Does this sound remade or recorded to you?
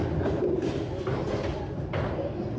recorded